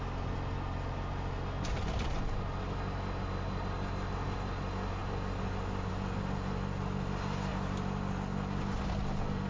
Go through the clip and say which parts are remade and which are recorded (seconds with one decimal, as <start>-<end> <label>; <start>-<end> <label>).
0.0-9.5 recorded